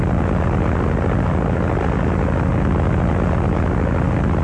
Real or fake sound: real